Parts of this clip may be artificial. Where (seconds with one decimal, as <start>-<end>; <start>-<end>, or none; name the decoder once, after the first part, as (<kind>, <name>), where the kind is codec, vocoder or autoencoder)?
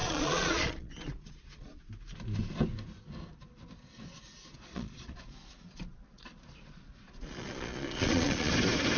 0.0-1.9 (vocoder, Vocos); 4.5-8.5